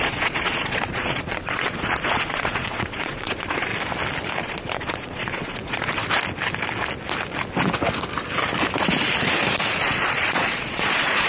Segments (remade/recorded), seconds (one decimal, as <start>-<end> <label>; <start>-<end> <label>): 0.0-3.7 remade; 3.7-4.4 recorded; 4.4-6.0 remade; 6.0-9.8 recorded; 9.8-11.3 remade